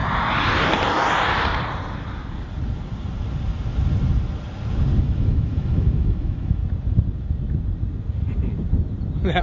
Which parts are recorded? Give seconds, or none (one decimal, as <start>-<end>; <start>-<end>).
0.0-5.0; 6.6-9.4